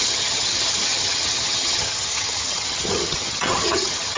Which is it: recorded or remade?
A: remade